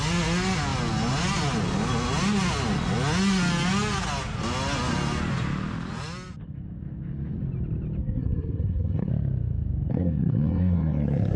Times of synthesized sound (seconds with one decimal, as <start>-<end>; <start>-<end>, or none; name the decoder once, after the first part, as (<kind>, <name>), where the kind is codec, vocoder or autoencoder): 8.0-9.1 (codec, SNAC); 9.9-11.4